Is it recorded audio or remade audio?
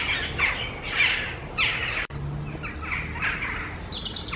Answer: recorded